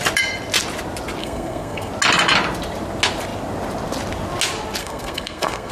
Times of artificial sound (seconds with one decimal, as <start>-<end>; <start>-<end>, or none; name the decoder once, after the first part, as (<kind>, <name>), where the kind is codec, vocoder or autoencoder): 1.2-1.9 (codec, SNAC); 4.8-5.7